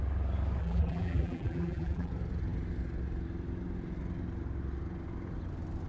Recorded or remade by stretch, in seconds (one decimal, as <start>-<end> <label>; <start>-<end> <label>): 0.0-0.6 recorded; 0.6-2.1 remade; 2.1-5.9 recorded